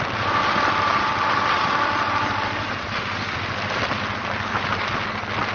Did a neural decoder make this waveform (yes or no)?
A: yes